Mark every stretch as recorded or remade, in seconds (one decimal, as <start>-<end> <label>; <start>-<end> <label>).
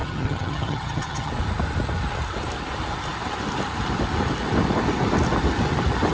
0.0-1.3 remade; 1.3-6.1 recorded